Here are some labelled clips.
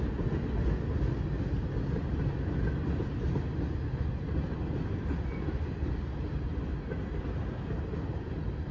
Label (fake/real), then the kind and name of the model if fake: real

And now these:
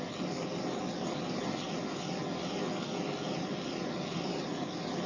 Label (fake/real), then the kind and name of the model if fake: real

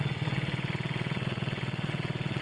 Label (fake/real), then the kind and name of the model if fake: fake, vocoder, WaveNeXt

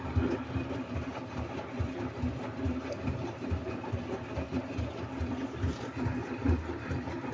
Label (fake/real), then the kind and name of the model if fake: real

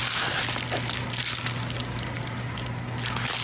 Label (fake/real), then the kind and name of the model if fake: real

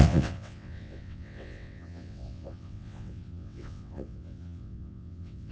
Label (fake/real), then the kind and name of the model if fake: fake, vocoder, WaveNeXt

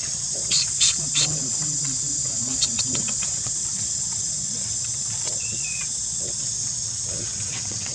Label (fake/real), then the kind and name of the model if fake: fake, vocoder, WaveNeXt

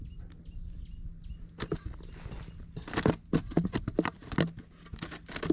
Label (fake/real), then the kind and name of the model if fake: real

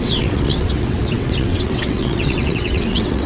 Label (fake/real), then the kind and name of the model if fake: fake, vocoder, WaveNeXt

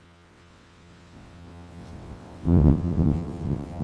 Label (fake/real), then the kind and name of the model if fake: fake, vocoder, WaveNeXt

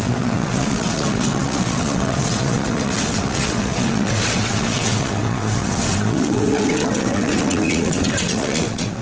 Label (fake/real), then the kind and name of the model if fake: fake, vocoder, WaveNeXt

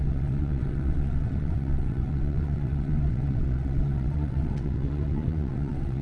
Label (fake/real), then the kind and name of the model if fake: fake, vocoder, WaveNeXt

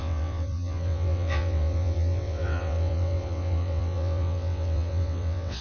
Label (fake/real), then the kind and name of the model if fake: fake, vocoder, WaveNeXt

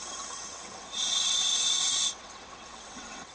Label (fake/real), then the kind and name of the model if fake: fake, vocoder, WaveNeXt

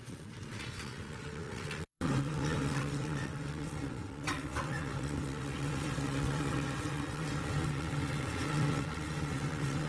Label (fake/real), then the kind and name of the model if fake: fake, vocoder, WaveNeXt